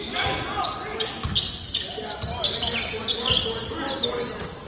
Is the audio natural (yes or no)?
yes